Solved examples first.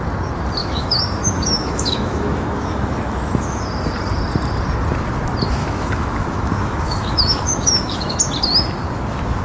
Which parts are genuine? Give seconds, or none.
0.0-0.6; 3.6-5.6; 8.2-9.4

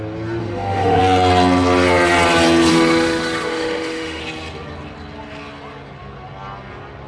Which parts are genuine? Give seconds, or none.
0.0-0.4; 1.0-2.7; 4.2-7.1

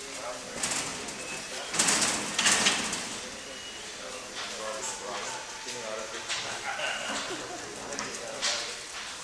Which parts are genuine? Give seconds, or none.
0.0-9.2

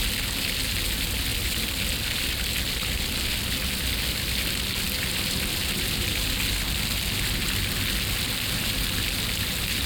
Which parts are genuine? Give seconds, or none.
0.0-9.9

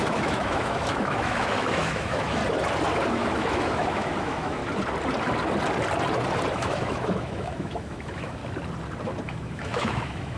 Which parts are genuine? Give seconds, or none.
2.4-3.1; 4.6-6.5; 8.4-9.2

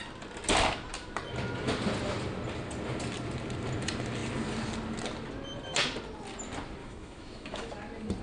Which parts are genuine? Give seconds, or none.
0.0-6.8; 7.7-8.2